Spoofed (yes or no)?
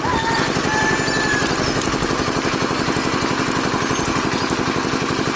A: no